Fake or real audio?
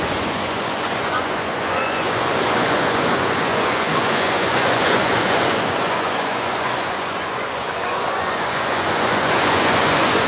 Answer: fake